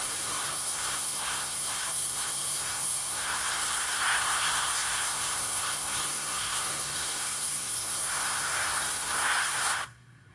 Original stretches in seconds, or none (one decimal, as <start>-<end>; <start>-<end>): none